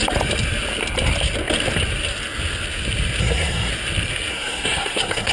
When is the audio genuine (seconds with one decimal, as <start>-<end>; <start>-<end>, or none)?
0.0-3.2; 3.7-4.3